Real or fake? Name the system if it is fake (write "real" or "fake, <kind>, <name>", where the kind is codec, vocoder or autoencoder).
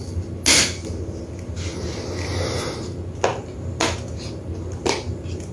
real